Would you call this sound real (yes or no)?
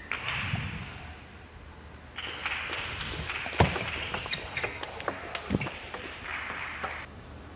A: yes